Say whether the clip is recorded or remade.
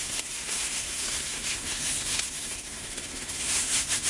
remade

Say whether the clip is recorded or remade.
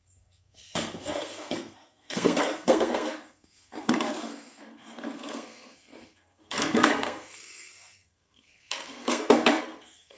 remade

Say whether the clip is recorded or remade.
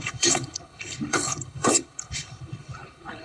remade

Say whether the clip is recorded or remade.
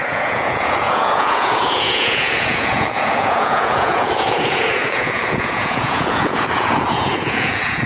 remade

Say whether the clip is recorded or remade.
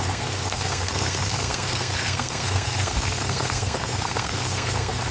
remade